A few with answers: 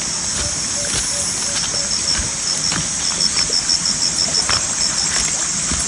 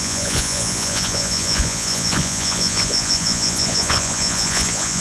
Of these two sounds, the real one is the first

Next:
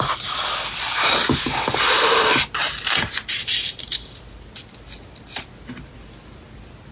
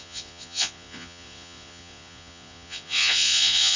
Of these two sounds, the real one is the first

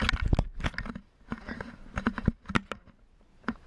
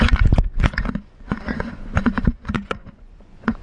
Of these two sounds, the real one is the first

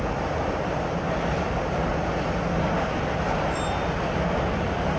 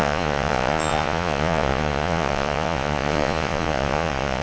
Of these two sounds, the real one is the first